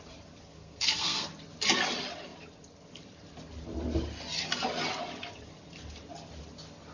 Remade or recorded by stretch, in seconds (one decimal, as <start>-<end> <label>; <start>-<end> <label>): 0.0-0.5 recorded; 0.5-1.3 remade; 1.3-6.9 recorded